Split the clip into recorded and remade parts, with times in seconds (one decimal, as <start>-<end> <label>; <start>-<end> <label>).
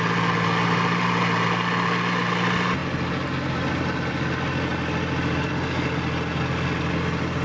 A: 0.0-7.4 recorded